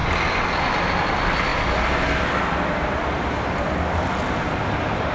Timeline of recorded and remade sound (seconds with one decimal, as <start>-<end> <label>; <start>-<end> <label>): 0.0-5.1 recorded